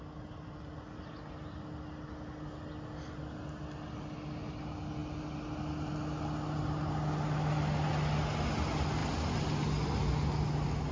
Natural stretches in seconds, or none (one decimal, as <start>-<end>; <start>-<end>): 0.0-10.9